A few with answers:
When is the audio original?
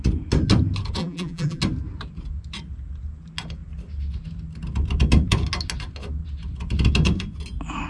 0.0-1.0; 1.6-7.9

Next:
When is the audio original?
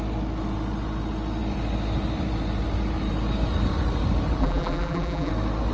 0.0-4.4; 5.3-5.7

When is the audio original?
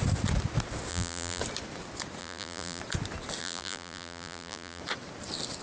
0.0-0.9; 1.4-2.2; 2.8-3.4; 4.8-5.6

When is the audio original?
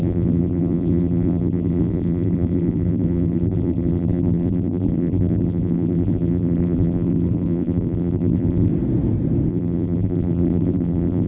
8.7-9.5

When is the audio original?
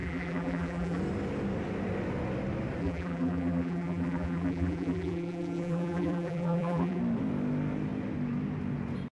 1.0-2.8; 7.0-9.1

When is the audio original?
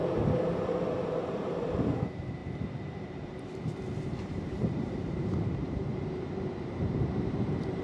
none